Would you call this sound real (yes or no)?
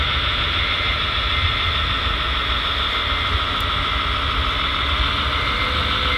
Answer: yes